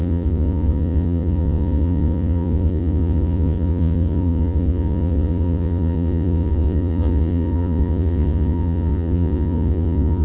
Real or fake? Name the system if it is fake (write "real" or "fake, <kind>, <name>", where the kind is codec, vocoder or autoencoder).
fake, vocoder, Vocos